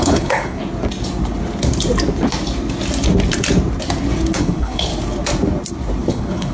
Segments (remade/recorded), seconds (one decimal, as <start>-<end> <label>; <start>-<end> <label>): 0.0-0.6 remade; 0.6-4.4 recorded; 4.4-4.9 remade; 4.9-6.1 recorded; 6.1-6.5 remade